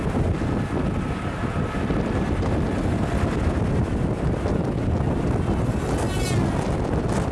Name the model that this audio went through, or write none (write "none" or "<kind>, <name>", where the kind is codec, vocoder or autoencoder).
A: none